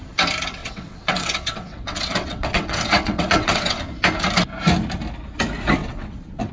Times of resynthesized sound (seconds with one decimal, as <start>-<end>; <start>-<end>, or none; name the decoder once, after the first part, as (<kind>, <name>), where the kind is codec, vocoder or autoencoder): 0.6-3.8 (vocoder, WaveNeXt); 5.8-6.5